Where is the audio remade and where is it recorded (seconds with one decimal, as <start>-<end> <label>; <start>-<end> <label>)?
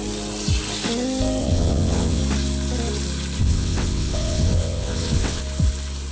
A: 0.0-1.4 recorded; 1.4-2.2 remade; 2.2-3.4 recorded; 3.4-5.4 remade; 5.4-6.1 recorded